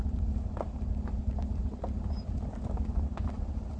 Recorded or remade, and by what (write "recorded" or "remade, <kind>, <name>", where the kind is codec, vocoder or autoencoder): recorded